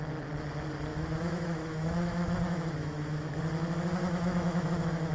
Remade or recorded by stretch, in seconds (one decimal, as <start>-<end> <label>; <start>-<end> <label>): 0.0-0.9 recorded; 0.9-3.4 remade; 3.4-4.0 recorded; 4.0-5.1 remade